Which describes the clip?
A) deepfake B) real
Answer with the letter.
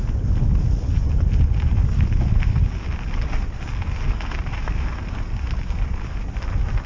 B